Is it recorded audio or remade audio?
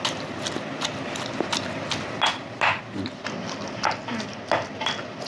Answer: recorded